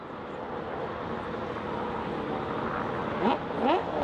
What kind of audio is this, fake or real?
real